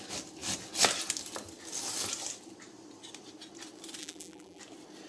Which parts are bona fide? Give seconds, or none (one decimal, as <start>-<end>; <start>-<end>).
0.0-4.0; 4.6-5.1